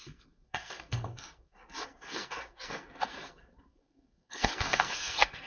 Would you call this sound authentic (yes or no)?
no